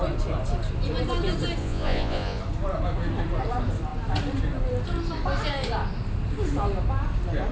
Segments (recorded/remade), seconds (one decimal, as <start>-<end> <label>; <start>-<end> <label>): 0.0-1.6 recorded; 1.6-2.4 remade; 2.4-7.5 recorded